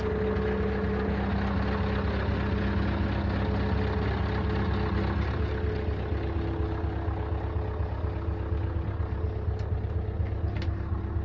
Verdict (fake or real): real